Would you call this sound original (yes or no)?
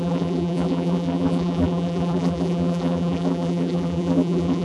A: no